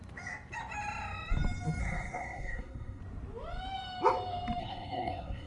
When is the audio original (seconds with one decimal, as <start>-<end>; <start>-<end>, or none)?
0.0-1.8; 3.0-4.6